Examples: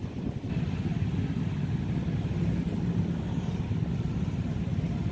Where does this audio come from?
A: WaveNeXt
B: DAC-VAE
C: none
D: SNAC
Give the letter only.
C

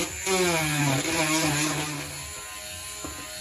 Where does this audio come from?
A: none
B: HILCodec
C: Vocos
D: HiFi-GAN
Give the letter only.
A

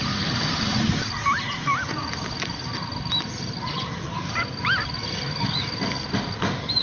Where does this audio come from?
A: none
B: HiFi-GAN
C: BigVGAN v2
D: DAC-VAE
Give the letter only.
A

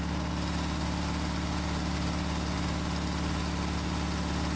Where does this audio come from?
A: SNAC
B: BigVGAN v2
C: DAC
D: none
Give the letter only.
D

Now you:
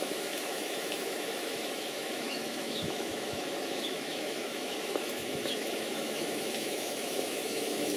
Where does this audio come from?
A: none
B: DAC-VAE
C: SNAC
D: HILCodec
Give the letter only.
B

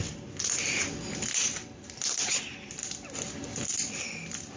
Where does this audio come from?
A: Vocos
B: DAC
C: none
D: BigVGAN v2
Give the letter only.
C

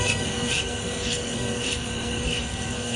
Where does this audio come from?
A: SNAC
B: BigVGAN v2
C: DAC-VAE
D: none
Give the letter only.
A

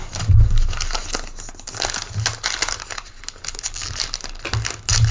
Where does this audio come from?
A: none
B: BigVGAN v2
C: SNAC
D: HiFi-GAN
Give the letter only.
A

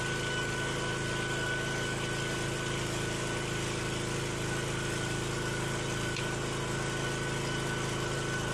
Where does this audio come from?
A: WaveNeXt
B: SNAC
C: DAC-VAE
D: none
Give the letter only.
D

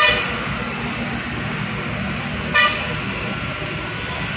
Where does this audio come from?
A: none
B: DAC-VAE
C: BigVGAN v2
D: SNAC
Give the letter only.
A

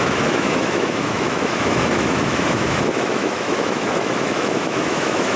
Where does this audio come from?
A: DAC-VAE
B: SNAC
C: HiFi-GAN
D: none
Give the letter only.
A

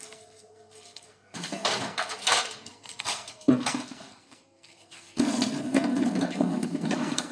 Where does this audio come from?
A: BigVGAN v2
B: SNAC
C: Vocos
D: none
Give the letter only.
B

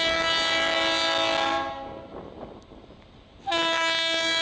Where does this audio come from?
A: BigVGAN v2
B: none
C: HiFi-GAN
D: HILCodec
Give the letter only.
B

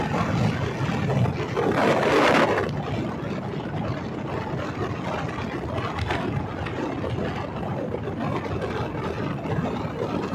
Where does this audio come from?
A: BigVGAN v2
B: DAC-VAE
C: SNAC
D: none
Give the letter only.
D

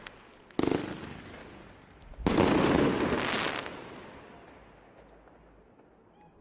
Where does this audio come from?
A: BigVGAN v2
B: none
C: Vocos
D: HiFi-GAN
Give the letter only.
B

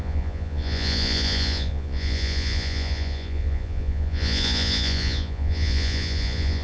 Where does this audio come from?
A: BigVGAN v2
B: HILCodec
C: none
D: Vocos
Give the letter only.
D